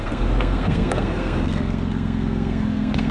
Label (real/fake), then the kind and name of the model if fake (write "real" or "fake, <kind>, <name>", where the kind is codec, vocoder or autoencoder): fake, codec, SNAC